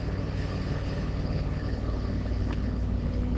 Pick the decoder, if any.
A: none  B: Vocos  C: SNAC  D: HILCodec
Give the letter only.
D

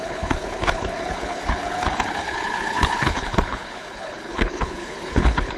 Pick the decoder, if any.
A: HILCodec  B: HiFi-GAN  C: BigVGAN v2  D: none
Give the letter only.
A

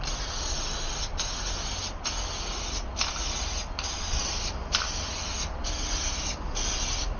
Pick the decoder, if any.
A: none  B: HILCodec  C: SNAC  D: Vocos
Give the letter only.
A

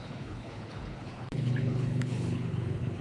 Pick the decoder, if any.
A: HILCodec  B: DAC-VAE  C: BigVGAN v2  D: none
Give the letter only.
A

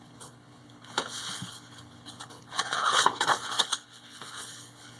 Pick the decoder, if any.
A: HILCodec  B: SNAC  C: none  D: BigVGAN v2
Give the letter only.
A